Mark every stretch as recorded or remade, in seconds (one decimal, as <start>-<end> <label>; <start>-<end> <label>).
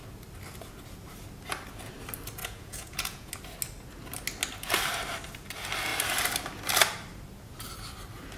0.0-2.4 recorded; 2.4-3.3 remade; 3.3-8.4 recorded